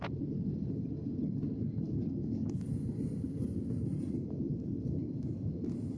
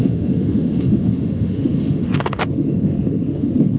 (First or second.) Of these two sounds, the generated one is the second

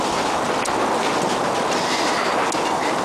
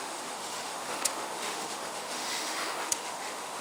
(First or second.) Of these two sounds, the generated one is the second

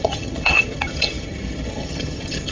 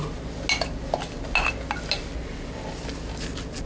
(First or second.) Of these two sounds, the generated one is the first